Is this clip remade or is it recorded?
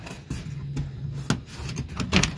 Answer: recorded